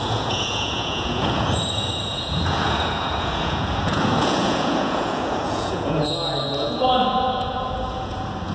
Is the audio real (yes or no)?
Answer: no